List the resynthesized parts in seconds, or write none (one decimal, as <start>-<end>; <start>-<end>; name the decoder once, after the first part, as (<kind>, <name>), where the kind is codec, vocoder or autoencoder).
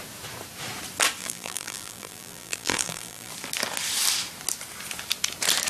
1.2-3.3 (vocoder, BigVGAN v2)